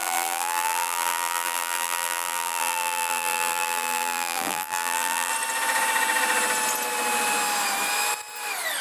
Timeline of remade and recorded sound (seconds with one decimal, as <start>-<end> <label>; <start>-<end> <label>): 0.0-5.3 remade; 5.3-8.8 recorded